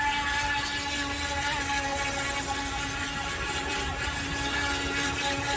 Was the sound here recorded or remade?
recorded